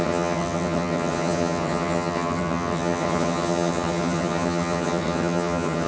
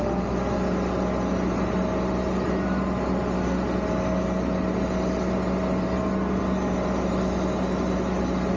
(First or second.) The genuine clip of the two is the second